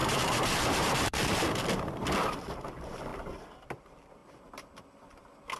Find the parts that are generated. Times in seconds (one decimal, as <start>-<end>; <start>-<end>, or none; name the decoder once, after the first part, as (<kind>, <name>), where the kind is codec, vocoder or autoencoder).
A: 0.0-4.2 (vocoder, BigVGAN v2)